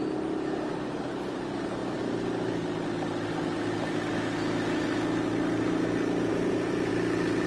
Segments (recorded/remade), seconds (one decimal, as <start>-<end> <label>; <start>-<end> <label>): 0.0-1.8 remade; 1.8-6.3 recorded; 6.3-6.9 remade; 6.9-7.5 recorded